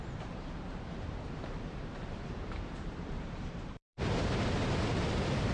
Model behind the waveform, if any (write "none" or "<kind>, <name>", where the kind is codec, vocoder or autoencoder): vocoder, BigVGAN v2